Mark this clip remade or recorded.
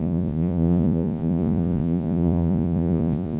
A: remade